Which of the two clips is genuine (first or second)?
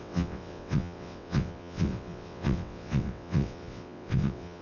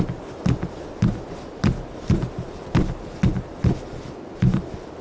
second